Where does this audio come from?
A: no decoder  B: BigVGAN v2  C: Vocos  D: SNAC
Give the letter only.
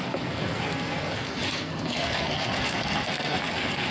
D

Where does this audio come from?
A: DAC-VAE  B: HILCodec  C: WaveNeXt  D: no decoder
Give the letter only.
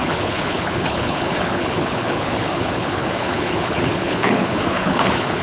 B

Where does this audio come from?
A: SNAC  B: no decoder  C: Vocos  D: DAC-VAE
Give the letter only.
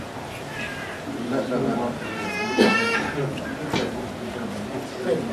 B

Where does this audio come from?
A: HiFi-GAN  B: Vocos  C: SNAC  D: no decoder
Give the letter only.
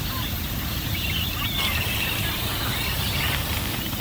D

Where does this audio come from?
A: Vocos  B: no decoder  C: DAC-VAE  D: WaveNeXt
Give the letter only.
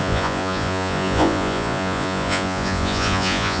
A